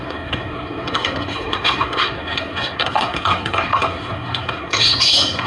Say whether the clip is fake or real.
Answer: fake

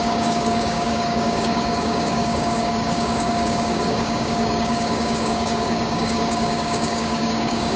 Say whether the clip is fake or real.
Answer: fake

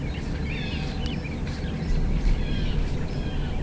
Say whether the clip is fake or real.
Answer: real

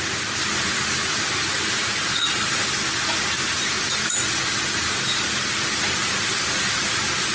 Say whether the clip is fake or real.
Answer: real